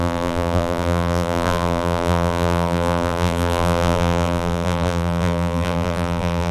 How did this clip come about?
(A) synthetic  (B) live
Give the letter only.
A